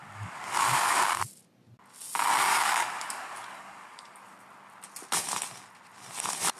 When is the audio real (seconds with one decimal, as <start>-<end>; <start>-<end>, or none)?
1.2-2.5; 4.2-6.6

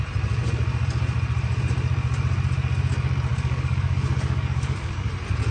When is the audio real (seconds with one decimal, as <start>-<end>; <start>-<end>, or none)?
0.0-3.3; 5.1-5.5

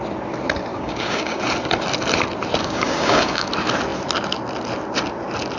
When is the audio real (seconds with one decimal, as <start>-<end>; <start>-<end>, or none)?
0.0-0.7; 1.4-2.6; 3.5-5.6

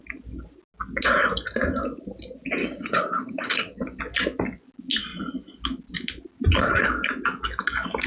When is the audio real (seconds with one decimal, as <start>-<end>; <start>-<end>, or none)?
0.0-2.6; 4.0-8.1